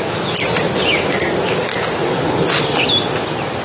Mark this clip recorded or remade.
recorded